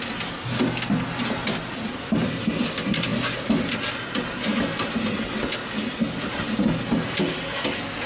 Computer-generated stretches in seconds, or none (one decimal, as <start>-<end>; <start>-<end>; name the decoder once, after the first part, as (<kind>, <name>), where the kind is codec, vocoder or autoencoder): 1.4-2.6 (vocoder, BigVGAN v2)